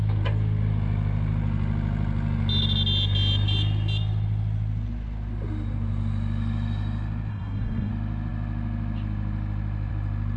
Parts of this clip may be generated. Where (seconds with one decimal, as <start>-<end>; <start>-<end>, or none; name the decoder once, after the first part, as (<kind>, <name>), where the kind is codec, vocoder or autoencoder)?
7.3-7.9 (codec, SNAC)